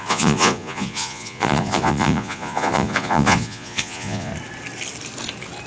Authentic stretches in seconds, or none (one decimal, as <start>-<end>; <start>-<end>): 4.3-5.7